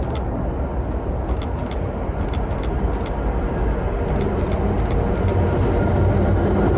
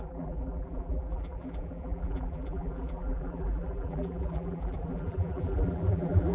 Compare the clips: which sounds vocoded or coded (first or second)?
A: second